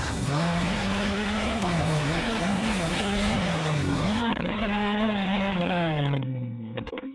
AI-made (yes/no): yes